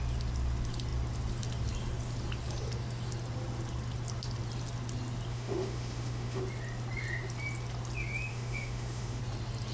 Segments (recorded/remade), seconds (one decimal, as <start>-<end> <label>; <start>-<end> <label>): 0.0-5.3 recorded; 5.3-6.4 remade; 6.4-8.3 recorded; 8.3-9.2 remade; 9.2-9.7 recorded

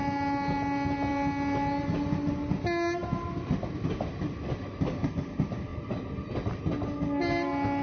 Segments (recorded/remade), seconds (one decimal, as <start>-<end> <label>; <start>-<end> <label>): 0.0-7.8 recorded

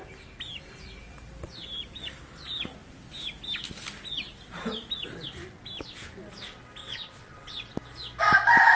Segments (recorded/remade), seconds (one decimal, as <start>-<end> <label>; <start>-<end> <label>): 0.0-6.8 recorded; 6.8-7.6 remade; 7.6-8.8 recorded

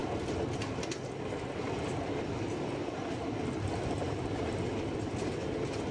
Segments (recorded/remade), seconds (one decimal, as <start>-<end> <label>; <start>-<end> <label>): 0.0-5.9 recorded

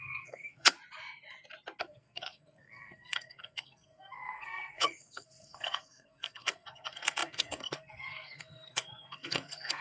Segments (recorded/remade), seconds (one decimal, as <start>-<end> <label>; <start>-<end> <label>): 0.0-0.7 remade; 0.7-1.8 recorded; 1.8-9.8 remade

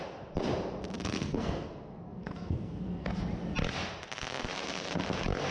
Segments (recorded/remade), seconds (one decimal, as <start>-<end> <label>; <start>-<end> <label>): 0.0-1.0 recorded; 1.0-3.2 remade; 3.2-5.5 recorded

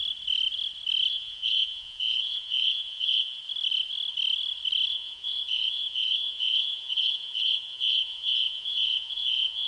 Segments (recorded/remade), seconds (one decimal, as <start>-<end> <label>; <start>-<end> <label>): 0.0-1.1 recorded; 1.1-3.4 remade; 3.4-4.9 recorded; 4.9-9.7 remade

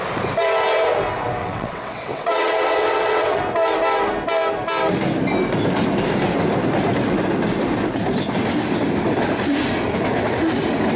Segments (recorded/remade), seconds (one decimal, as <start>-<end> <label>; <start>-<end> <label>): 0.0-1.4 recorded; 1.4-3.4 remade; 3.4-11.0 recorded